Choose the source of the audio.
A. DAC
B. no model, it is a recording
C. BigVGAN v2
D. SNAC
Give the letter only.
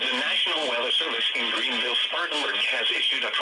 B